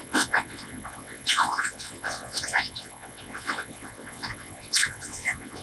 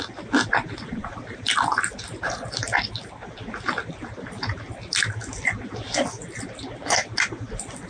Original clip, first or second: second